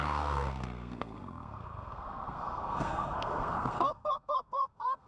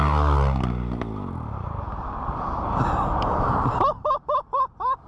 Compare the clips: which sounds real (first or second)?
second